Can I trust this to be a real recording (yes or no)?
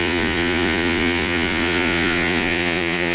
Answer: no